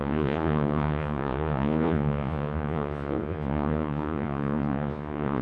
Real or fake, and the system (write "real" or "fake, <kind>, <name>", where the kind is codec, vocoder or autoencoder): fake, vocoder, Vocos